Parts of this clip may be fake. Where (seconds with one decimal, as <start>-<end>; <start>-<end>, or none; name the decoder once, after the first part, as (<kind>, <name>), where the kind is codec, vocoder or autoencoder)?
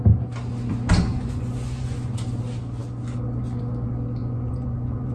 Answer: 1.1-2.1 (vocoder, Vocos); 4.2-5.1